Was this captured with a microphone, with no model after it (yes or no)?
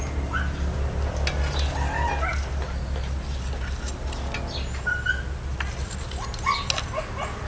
yes